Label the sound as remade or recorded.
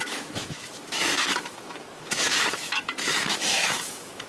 remade